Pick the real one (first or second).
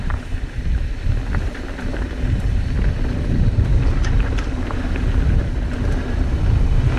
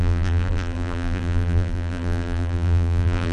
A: first